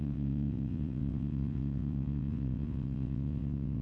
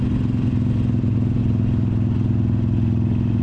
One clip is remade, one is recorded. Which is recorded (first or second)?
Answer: second